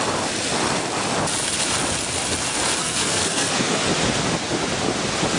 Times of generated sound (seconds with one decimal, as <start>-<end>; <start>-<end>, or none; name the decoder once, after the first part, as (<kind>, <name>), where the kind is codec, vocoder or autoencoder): 2.8-3.8 (codec, SNAC)